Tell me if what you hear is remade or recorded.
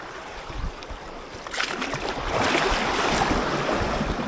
recorded